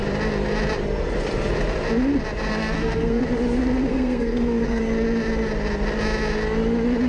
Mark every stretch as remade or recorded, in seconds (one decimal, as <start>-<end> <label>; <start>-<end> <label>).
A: 0.0-2.5 recorded; 2.5-3.2 remade; 3.2-3.9 recorded; 3.9-4.8 remade; 4.8-7.1 recorded